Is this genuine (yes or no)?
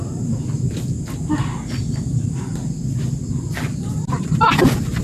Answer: yes